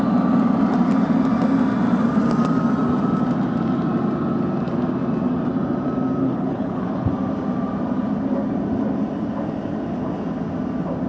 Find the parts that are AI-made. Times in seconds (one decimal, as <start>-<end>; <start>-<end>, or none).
6.2-7.1